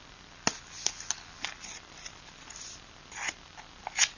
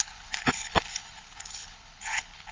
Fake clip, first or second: second